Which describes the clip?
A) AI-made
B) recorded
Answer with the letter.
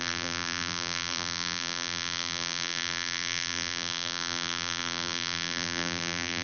A